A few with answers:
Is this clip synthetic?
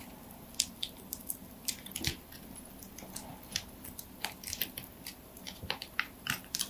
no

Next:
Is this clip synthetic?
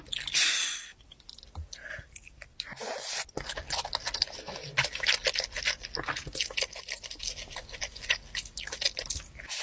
no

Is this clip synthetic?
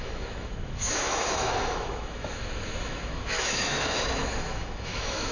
yes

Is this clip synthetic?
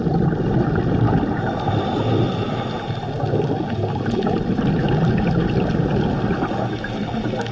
no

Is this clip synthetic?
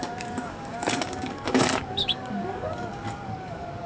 yes